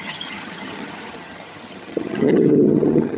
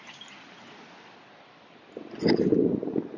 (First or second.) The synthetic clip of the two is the first